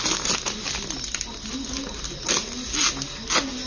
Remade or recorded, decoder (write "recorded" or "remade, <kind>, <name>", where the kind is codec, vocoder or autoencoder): recorded